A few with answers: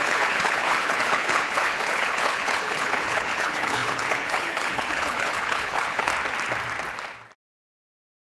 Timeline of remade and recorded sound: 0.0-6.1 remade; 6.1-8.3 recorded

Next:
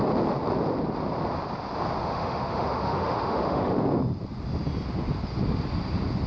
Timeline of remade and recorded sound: 0.0-2.0 recorded; 2.0-3.7 remade; 3.7-6.3 recorded

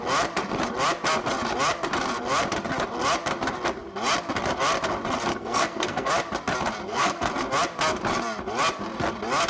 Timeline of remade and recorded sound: 0.0-5.3 recorded; 5.3-6.1 remade; 6.1-6.8 recorded; 6.8-7.3 remade; 7.3-9.5 recorded

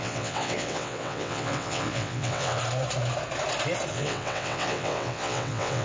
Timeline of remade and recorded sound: 0.0-2.6 remade; 2.6-3.9 recorded; 3.9-5.8 remade

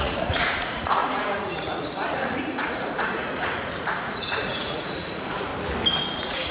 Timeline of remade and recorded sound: 0.0-5.5 remade; 5.5-6.1 recorded; 6.1-6.5 remade

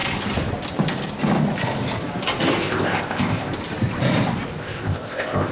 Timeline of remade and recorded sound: 0.0-2.6 recorded; 2.6-3.5 remade; 3.5-4.6 recorded; 4.6-5.5 remade

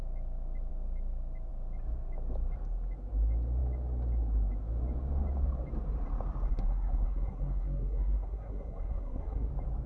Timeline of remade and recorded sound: 0.0-6.5 recorded; 6.5-9.5 remade; 9.5-9.9 recorded

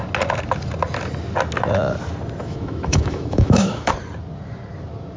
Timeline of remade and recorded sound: 0.0-2.4 recorded; 2.4-3.9 remade; 3.9-5.2 recorded